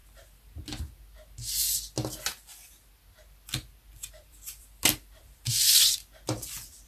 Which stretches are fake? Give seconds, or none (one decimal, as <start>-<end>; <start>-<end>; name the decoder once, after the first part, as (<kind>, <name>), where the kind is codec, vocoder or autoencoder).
4.1-6.9 (vocoder, BigVGAN v2)